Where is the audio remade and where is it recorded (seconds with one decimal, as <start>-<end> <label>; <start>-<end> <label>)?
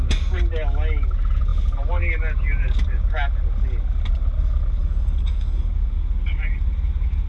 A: 0.0-4.8 recorded; 4.8-5.7 remade; 5.7-7.3 recorded